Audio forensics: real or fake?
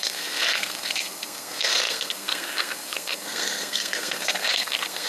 fake